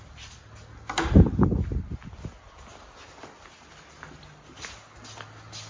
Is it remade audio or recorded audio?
recorded